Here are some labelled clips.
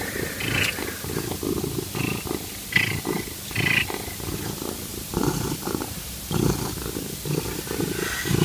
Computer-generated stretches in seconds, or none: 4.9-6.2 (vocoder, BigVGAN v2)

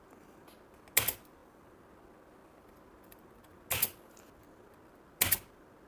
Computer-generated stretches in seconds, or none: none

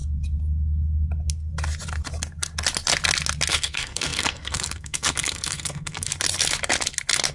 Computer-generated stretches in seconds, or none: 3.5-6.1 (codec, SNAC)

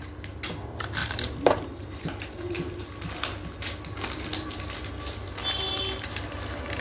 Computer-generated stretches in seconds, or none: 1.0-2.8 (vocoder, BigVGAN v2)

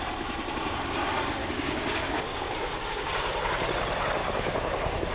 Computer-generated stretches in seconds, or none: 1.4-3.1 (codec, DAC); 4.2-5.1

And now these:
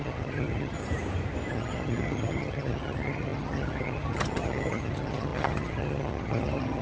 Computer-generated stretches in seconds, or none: 0.0-0.8 (vocoder, HiFi-GAN); 1.5-6.8

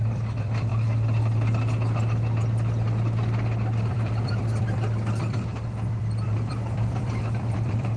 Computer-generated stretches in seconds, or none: 0.0-0.7 (vocoder, BigVGAN v2); 3.8-8.0